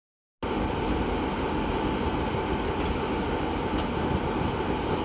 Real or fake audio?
real